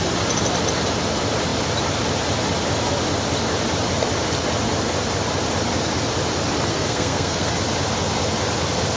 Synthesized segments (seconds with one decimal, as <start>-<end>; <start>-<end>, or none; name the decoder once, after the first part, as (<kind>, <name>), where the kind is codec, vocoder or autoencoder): 6.7-7.5 (codec, SNAC)